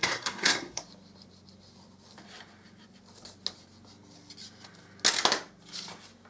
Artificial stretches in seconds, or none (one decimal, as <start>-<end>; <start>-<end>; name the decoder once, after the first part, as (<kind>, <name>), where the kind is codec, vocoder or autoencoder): 0.0-0.8 (codec, SNAC)